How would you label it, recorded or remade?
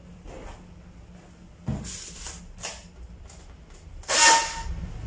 recorded